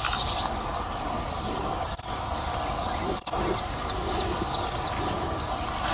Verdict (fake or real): real